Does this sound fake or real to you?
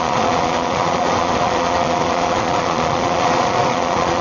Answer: fake